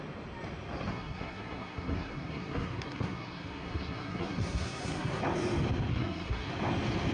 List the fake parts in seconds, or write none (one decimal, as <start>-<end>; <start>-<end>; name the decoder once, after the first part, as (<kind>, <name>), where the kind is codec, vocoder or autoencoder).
0.9-5.2 (codec, SNAC); 5.9-6.5